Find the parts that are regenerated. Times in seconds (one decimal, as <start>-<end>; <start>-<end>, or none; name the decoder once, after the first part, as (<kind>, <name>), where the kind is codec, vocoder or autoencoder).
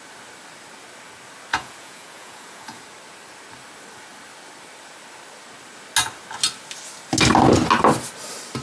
1.5-2.8 (vocoder, Vocos)